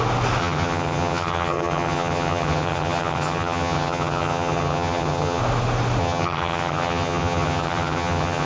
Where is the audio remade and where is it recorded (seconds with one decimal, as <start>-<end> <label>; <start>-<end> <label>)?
0.0-0.4 recorded; 0.4-5.4 remade; 5.4-6.0 recorded; 6.0-8.5 remade